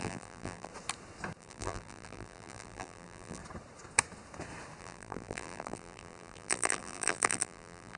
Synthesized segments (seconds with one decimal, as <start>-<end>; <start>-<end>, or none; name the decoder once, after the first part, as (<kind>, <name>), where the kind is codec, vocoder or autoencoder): 0.0-0.7 (vocoder, BigVGAN v2); 1.4-3.4; 4.8-8.0